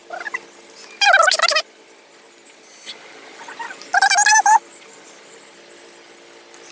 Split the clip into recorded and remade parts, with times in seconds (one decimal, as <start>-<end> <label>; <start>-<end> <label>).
0.0-6.7 recorded